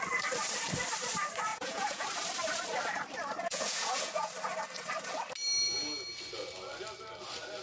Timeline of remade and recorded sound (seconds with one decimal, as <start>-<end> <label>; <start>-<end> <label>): 0.0-1.5 recorded; 1.5-2.1 remade; 2.1-3.4 recorded; 3.4-4.3 remade; 4.3-7.6 recorded